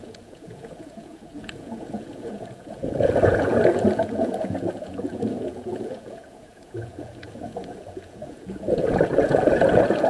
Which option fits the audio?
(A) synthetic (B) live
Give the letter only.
A